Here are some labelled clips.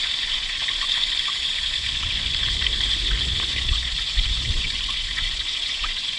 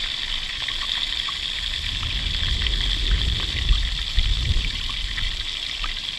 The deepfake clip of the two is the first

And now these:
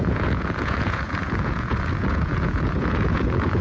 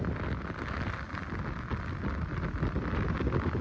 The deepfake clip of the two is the first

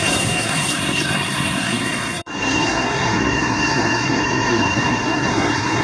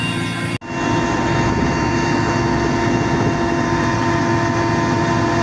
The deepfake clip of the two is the first